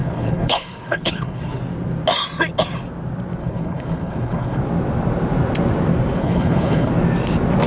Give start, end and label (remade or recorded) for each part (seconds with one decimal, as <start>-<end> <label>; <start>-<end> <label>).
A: 0.0-1.6 remade; 1.6-3.4 recorded; 3.4-4.6 remade; 4.6-6.2 recorded; 6.2-6.9 remade; 6.9-7.7 recorded